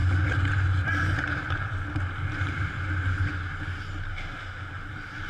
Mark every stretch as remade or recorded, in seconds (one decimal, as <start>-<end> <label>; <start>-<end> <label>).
0.0-4.1 recorded; 4.1-4.8 remade; 4.8-5.3 recorded